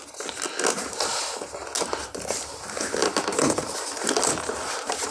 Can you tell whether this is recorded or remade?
recorded